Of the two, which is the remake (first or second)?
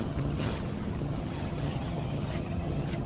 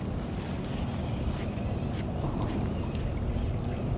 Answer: first